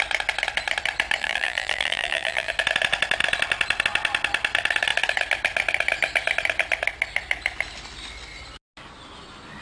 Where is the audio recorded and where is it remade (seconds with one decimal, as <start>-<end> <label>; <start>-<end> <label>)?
0.0-1.2 recorded; 1.2-2.5 remade; 2.5-9.6 recorded